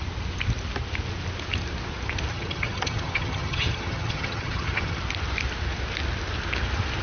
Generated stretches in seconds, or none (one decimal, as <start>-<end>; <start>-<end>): 2.3-5.0